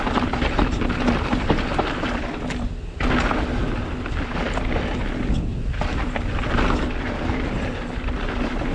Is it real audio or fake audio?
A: real